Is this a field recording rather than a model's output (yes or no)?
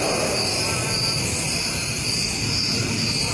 yes